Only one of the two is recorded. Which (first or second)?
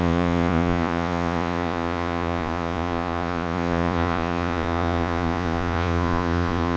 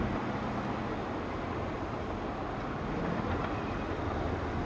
second